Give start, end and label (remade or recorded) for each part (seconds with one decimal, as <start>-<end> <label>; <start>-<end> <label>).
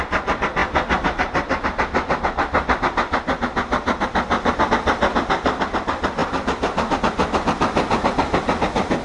0.0-6.2 recorded; 6.2-7.0 remade; 7.0-9.0 recorded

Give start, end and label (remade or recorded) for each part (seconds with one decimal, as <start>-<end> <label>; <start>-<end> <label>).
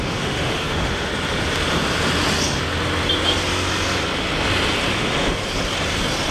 0.0-1.1 remade; 1.1-4.9 recorded; 4.9-5.4 remade; 5.4-6.3 recorded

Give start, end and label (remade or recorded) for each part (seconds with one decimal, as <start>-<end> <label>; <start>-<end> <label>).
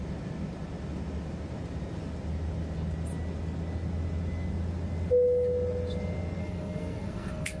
0.0-6.4 recorded; 6.4-7.6 remade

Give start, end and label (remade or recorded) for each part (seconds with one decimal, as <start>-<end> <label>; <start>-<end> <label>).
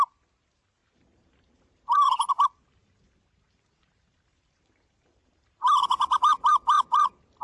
0.0-0.8 recorded; 0.8-2.3 remade; 2.3-2.8 recorded; 2.8-6.2 remade; 6.2-7.4 recorded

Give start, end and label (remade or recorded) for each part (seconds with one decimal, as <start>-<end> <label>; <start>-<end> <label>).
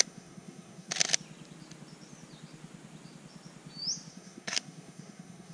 0.0-0.9 remade; 0.9-4.1 recorded; 4.1-5.5 remade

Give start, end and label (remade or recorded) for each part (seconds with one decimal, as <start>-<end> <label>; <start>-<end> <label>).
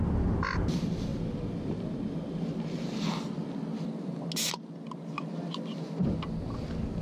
0.0-7.0 recorded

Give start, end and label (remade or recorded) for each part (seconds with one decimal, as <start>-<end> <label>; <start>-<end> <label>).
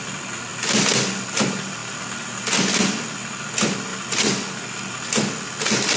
0.0-6.0 recorded